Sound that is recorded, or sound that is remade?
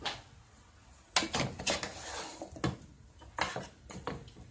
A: recorded